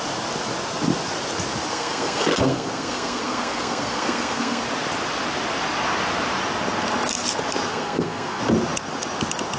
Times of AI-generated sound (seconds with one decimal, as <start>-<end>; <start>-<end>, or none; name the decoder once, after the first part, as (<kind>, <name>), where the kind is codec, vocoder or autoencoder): 1.7-4.6 (codec, SNAC); 7.7-8.4